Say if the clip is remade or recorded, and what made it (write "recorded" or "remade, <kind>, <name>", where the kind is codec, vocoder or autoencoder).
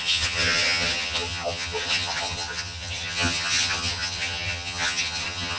remade, vocoder, HiFi-GAN